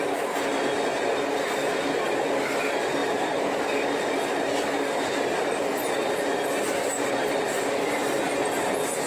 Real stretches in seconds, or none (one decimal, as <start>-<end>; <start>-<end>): 0.0-9.1

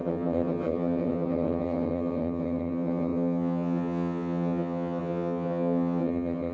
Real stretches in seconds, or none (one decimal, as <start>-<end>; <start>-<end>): none

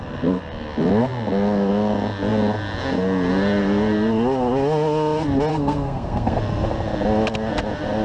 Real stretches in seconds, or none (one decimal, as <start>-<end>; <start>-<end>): 0.0-5.5; 6.4-8.0

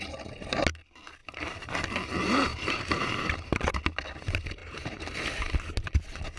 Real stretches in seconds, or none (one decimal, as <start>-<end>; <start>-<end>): 0.0-1.2; 1.7-2.5; 3.8-4.6; 5.6-6.4

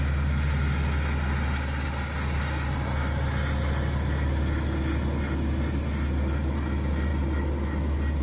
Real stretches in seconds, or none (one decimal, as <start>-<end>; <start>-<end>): 0.0-8.2

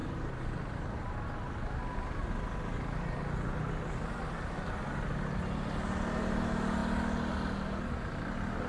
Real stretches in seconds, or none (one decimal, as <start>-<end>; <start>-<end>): 0.0-8.7

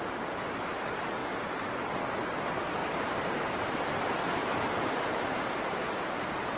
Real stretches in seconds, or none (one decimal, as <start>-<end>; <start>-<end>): 0.0-2.8; 3.8-4.4; 5.8-6.6